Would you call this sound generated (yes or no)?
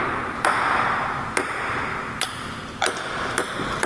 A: no